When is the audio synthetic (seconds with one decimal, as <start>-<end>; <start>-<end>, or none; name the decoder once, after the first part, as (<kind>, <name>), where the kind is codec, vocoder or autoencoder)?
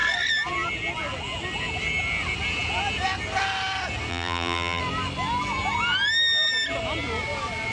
4.1-4.8 (vocoder, BigVGAN v2)